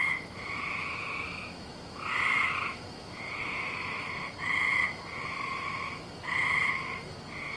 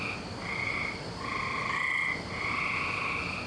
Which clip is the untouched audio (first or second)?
second